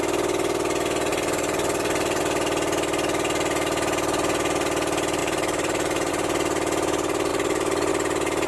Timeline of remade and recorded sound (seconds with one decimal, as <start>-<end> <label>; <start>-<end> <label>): 0.0-1.1 recorded; 1.1-2.2 remade; 2.2-5.2 recorded; 5.2-6.1 remade; 6.1-7.3 recorded; 7.3-7.9 remade; 7.9-8.5 recorded